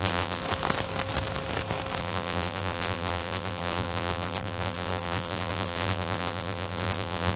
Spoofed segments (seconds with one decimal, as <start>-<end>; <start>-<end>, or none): 0.0-0.4; 2.0-7.4